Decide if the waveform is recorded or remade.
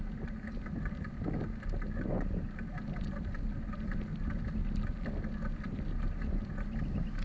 recorded